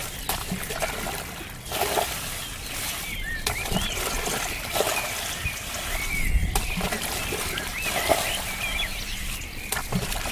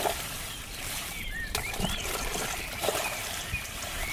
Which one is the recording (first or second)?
first